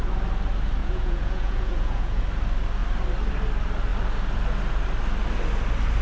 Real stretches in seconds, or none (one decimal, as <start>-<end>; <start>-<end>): 0.0-0.8; 2.2-6.0